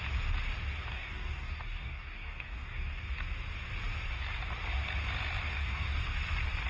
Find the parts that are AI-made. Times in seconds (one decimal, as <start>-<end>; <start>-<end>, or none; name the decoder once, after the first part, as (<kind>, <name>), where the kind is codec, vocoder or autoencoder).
0.9-3.0 (codec, DAC); 5.5-6.2